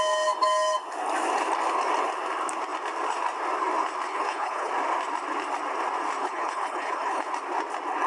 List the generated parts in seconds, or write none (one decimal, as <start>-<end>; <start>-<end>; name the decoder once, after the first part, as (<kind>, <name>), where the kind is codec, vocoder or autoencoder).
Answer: 4.1-4.7 (codec, HILCodec); 6.2-7.3